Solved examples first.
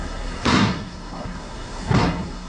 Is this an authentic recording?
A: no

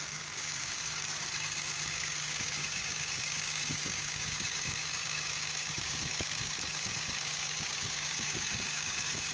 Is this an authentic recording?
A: no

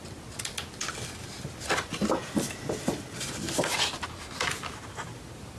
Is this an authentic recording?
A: yes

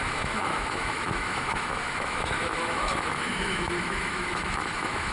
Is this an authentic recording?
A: no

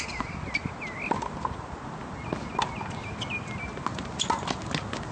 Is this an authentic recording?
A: yes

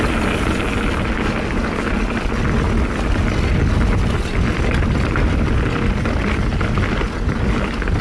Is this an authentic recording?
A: yes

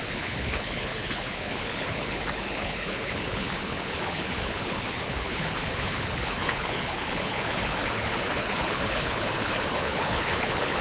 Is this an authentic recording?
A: no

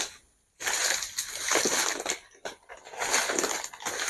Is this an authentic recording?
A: yes